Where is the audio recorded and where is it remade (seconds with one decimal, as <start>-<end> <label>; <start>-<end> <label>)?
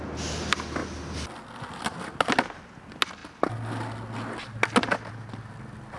0.0-6.0 recorded